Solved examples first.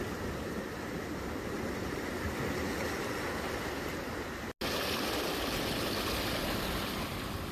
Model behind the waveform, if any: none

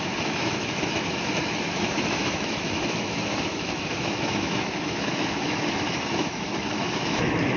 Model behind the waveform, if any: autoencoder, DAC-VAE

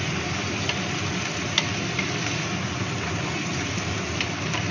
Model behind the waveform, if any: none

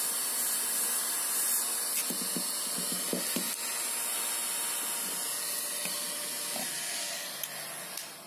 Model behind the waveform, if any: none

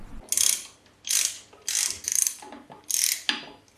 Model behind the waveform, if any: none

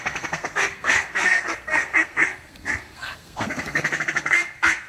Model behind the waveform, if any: codec, SNAC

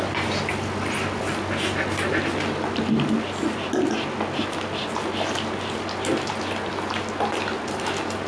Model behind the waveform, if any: none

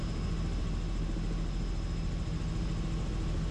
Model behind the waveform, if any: none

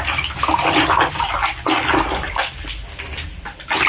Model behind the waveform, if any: none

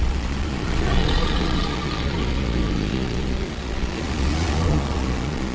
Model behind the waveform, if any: vocoder, Vocos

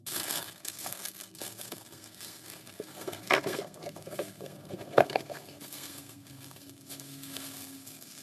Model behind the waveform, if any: codec, SNAC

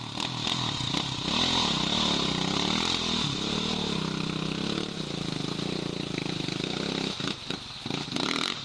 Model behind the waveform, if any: none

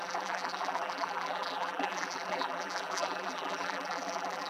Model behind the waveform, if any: vocoder, BigVGAN v2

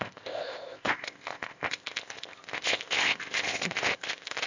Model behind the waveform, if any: codec, ZipCodec